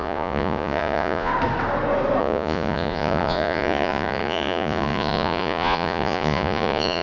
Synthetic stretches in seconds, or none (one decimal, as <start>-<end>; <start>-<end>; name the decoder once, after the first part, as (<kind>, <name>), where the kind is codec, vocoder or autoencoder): 0.0-1.3 (vocoder, Vocos); 2.2-7.0